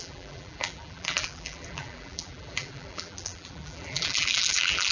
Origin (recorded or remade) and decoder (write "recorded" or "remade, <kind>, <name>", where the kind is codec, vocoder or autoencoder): remade, vocoder, BigVGAN v2